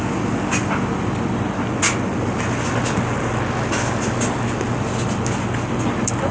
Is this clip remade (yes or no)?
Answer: no